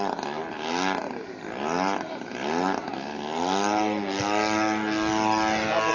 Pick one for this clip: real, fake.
real